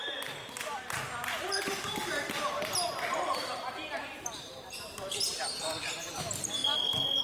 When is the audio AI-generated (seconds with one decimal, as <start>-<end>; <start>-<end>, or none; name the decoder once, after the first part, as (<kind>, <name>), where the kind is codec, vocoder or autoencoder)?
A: 1.4-2.0 (vocoder, BigVGAN v2); 3.4-6.6

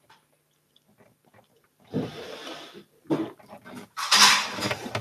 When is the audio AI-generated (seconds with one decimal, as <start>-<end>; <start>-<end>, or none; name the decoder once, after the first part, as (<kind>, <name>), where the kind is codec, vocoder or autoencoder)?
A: 1.6-4.6 (vocoder, BigVGAN v2)

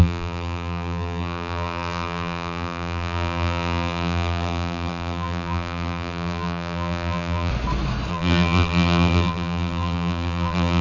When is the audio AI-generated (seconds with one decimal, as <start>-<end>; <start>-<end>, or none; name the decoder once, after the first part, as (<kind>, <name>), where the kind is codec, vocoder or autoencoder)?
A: 0.0-7.5 (vocoder, BigVGAN v2); 8.1-10.8

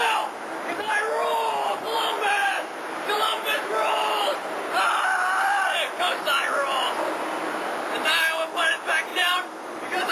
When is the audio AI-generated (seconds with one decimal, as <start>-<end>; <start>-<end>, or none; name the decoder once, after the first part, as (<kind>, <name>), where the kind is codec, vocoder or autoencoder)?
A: 1.7-4.6 (vocoder, BigVGAN v2); 9.1-10.1

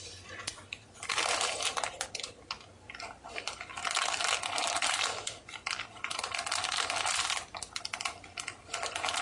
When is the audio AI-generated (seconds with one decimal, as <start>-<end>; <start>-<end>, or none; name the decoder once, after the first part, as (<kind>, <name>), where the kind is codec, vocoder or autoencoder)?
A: none

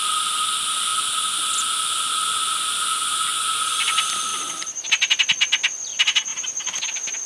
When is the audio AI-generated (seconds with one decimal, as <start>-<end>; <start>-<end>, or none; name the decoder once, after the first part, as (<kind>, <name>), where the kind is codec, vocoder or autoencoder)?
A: 4.3-4.9 (vocoder, BigVGAN v2)

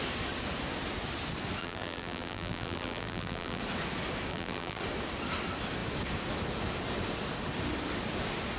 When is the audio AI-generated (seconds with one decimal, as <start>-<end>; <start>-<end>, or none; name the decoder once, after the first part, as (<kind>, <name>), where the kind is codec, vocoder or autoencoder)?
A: 1.6-3.6 (vocoder, BigVGAN v2); 4.3-4.8

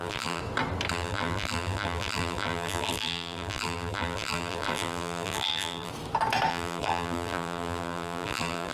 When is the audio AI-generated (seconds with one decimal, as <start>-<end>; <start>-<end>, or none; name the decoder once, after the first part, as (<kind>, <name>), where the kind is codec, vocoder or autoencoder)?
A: 0.0-0.4 (vocoder, BigVGAN v2); 0.9-5.9; 6.5-8.7